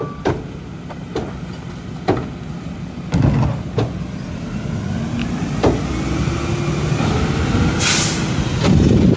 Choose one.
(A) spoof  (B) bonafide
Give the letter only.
B